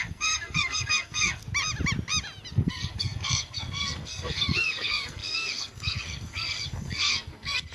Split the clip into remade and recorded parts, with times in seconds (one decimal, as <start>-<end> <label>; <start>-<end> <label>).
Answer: 0.0-1.4 remade; 1.4-2.5 recorded; 2.5-7.7 remade